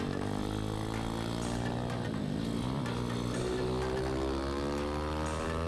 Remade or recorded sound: recorded